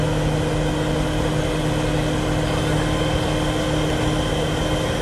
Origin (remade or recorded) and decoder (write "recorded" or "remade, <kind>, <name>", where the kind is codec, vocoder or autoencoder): recorded